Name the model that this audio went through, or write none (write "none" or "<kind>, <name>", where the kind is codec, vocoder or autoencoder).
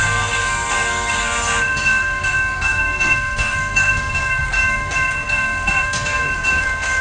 codec, SNAC